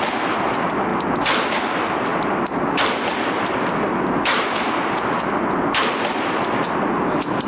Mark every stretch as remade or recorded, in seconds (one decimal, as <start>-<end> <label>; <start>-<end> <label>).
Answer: 0.0-7.5 recorded